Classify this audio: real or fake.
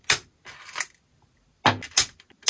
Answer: real